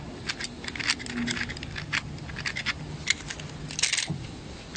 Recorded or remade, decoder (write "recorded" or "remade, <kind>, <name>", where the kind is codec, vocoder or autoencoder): recorded